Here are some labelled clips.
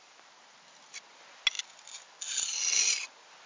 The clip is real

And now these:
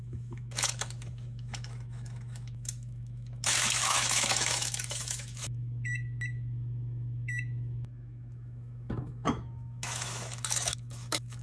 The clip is fake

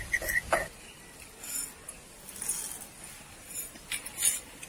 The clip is real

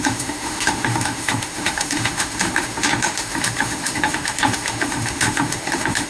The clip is fake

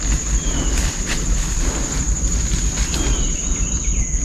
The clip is real